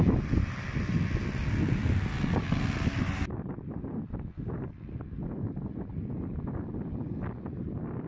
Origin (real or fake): real